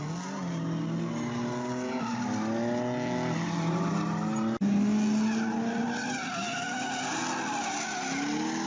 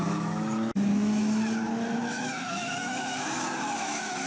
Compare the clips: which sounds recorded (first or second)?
first